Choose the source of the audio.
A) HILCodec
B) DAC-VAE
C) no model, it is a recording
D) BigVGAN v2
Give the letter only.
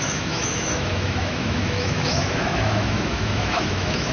B